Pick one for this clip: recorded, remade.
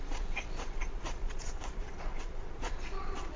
remade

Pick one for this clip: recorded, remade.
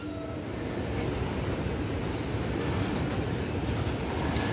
recorded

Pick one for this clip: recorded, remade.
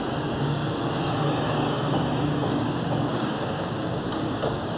remade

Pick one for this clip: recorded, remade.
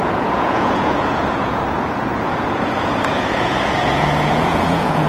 remade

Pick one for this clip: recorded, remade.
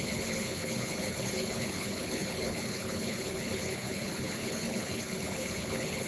remade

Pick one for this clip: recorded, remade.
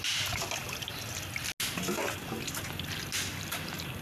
recorded